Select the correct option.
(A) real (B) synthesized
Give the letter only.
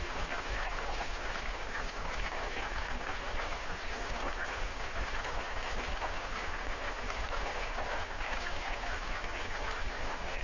B